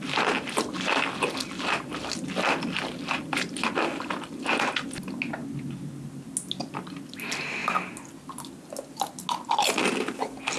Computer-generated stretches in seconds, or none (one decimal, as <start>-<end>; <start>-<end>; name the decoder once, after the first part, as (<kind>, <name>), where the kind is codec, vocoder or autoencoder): none